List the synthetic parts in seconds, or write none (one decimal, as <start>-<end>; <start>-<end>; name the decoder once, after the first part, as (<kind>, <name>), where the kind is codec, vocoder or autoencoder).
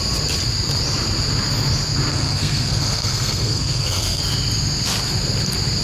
2.1-4.2 (codec, SNAC)